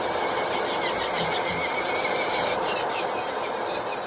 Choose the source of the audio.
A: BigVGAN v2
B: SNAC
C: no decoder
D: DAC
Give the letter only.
C